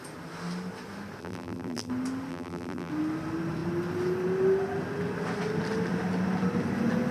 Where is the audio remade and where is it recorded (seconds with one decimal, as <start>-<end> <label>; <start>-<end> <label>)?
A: 0.0-1.2 recorded; 1.2-1.9 remade; 1.9-2.3 recorded; 2.3-2.9 remade; 2.9-7.1 recorded